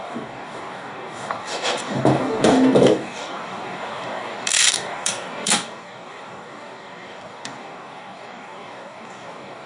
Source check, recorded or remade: remade